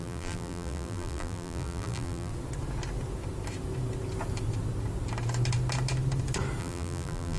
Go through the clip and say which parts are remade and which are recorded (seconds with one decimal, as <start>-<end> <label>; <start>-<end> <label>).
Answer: 0.0-2.3 remade; 2.3-6.6 recorded; 6.6-7.4 remade